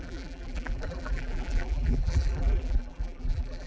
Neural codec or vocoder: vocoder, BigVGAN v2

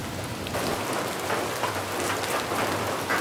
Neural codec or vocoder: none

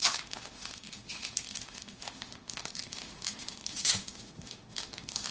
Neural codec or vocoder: autoencoder, DAC-VAE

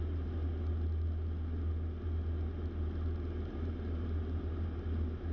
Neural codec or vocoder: none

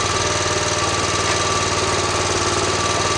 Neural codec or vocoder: none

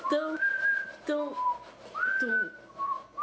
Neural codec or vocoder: none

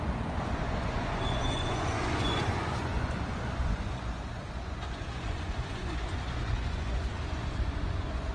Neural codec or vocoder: vocoder, Vocos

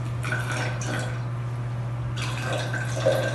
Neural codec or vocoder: none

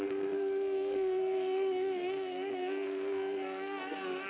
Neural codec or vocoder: codec, SNAC